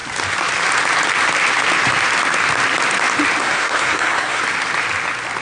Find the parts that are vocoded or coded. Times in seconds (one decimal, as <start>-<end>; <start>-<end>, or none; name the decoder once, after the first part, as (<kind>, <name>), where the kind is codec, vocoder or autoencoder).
3.4-4.4 (codec, SNAC)